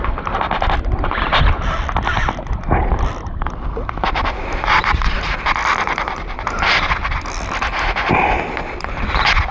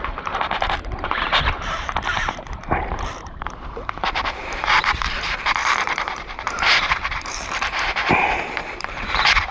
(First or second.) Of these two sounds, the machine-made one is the second